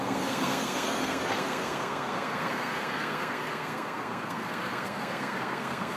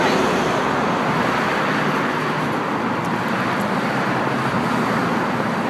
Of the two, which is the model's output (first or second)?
first